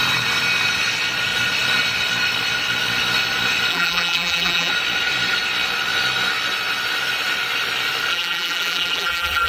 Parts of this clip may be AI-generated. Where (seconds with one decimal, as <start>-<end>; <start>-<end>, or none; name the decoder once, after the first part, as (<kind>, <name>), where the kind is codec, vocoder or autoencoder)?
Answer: 3.7-4.7 (vocoder, BigVGAN v2); 8.1-9.5